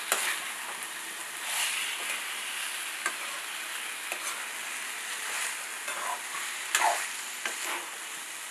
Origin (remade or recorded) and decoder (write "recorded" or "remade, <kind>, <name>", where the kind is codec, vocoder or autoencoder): recorded